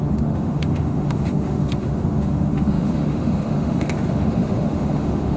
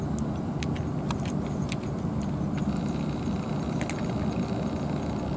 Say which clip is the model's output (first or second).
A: first